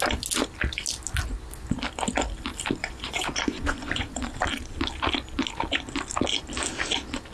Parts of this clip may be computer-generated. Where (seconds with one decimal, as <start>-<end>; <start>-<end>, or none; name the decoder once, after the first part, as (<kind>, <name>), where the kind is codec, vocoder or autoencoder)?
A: 2.8-4.4 (vocoder, Vocos)